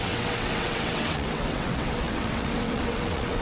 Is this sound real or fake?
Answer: fake